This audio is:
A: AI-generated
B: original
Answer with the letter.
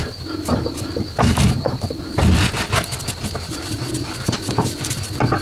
B